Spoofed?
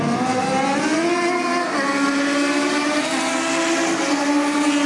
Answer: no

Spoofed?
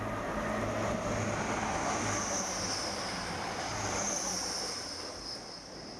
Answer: no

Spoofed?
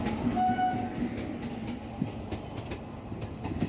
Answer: no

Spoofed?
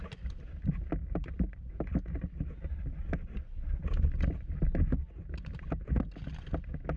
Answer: no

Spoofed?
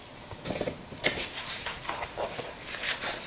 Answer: no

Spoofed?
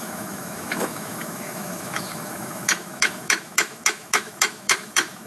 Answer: yes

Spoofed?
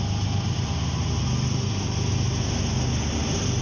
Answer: no